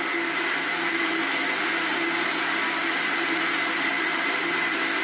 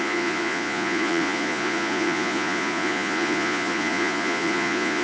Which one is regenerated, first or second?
second